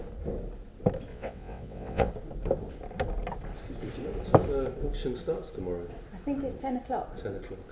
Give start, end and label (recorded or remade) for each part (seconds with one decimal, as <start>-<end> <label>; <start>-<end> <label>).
0.0-1.1 recorded; 1.1-2.1 remade; 2.1-7.7 recorded